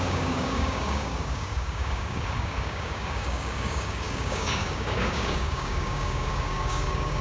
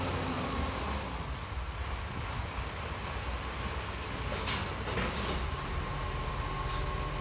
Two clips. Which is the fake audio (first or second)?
first